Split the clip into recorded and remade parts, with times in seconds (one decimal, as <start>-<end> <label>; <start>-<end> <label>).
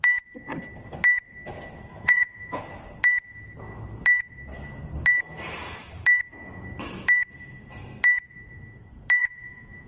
0.0-1.9 recorded; 1.9-2.6 remade; 2.6-9.2 recorded; 9.2-9.9 remade